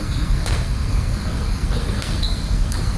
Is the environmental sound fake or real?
fake